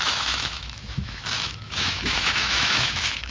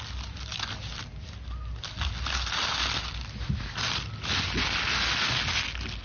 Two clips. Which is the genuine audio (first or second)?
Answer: second